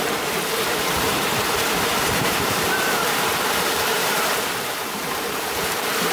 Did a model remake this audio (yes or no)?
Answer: yes